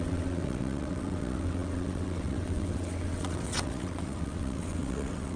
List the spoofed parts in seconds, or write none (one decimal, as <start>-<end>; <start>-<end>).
0.0-5.4

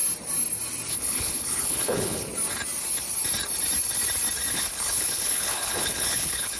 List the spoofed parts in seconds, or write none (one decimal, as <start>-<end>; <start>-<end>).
0.9-2.3; 4.5-6.6

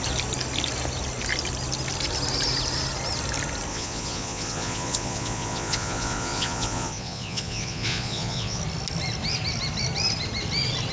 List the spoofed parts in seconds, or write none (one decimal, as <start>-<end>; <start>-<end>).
3.7-8.6

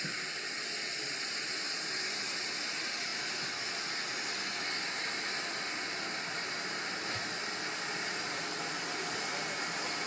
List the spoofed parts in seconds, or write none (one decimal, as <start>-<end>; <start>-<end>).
none

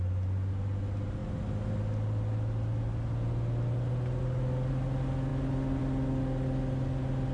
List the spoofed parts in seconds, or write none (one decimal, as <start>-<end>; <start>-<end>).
none

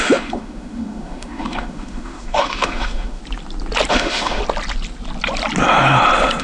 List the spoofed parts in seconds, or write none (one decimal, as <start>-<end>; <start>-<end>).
0.0-3.2; 3.9-4.4

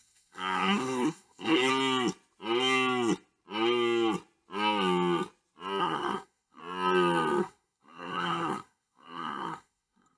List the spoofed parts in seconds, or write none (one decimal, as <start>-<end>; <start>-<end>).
0.0-1.7; 5.8-6.6; 7.4-10.2

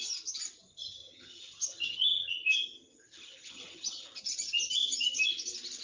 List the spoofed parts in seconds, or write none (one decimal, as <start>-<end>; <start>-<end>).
0.7-4.2